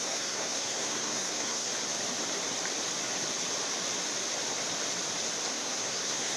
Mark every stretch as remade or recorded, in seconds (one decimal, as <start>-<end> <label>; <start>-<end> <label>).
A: 0.0-1.7 remade; 1.7-5.5 recorded; 5.5-6.4 remade